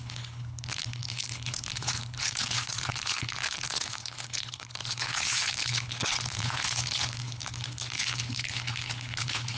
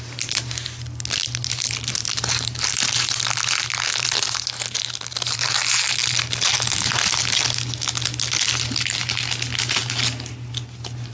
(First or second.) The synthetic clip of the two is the first